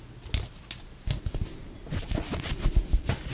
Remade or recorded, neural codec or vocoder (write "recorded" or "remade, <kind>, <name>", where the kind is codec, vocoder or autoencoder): recorded